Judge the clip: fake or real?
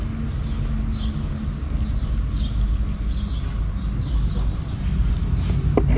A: real